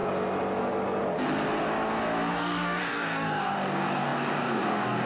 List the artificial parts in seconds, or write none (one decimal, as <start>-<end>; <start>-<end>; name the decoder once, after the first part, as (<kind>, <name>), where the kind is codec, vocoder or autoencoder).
2.3-5.1 (codec, DAC)